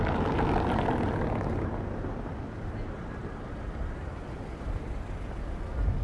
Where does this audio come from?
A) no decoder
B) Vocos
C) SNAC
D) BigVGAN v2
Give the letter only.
A